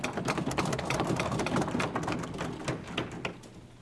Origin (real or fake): real